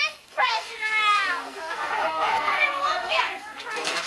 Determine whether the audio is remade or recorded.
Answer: remade